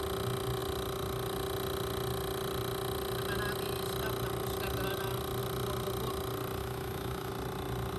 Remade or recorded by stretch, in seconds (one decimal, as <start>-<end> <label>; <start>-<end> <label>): 0.0-6.6 recorded; 6.6-7.3 remade; 7.3-8.0 recorded